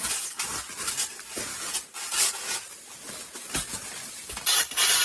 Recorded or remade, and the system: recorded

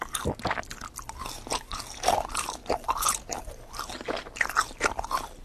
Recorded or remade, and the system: recorded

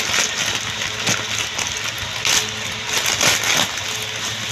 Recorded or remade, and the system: recorded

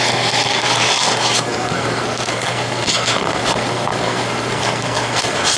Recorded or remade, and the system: remade, codec, SNAC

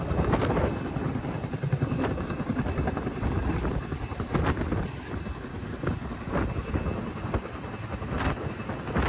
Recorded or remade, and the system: recorded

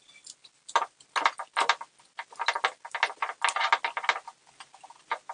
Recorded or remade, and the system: recorded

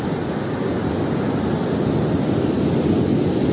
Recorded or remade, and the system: recorded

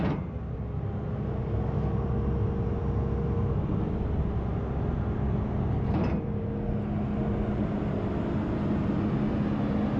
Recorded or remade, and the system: recorded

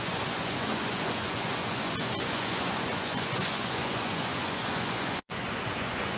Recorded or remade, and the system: remade, vocoder, Vocos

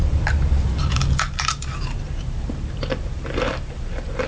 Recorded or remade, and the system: remade, vocoder, BigVGAN v2